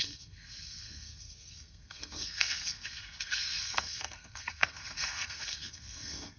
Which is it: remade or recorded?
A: remade